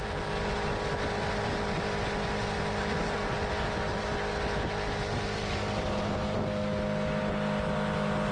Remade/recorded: recorded